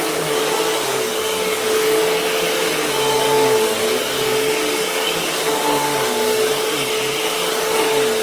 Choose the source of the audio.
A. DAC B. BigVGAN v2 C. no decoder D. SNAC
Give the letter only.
A